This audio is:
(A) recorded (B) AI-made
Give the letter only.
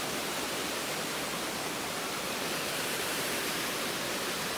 B